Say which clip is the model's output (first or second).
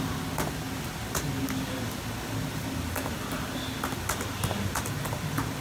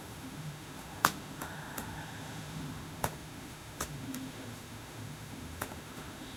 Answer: second